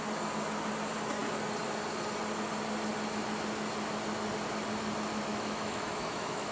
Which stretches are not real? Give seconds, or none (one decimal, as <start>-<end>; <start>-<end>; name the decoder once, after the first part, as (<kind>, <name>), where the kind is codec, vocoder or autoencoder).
5.3-6.5 (autoencoder, DAC-VAE)